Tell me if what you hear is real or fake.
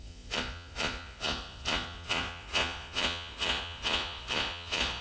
fake